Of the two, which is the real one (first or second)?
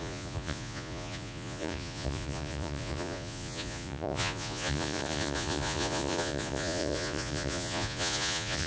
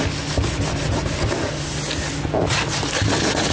second